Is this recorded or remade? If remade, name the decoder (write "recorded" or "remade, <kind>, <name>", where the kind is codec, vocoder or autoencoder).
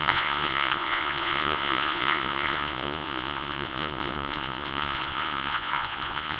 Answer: remade, vocoder, Vocos